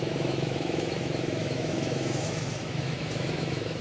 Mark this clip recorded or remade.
remade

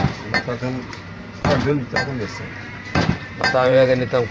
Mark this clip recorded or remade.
remade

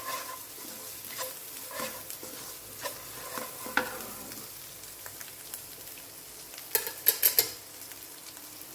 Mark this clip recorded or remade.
recorded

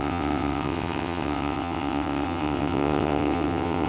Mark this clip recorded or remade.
remade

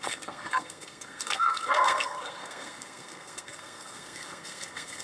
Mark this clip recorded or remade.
remade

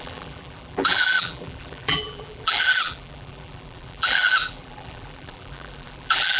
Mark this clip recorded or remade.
remade